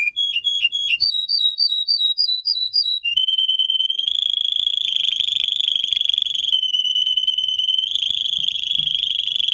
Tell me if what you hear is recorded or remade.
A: remade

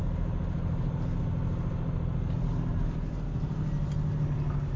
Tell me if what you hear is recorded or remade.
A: recorded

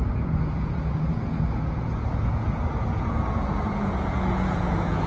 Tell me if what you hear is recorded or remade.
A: remade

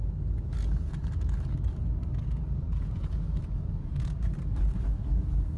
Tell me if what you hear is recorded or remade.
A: remade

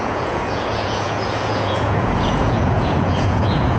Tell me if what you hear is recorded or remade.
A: remade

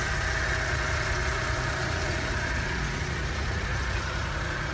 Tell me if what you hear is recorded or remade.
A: remade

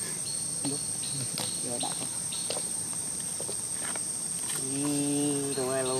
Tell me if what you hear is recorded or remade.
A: recorded